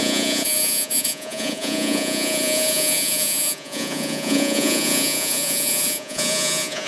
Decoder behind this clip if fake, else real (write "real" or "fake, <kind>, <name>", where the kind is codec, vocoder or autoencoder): fake, vocoder, Vocos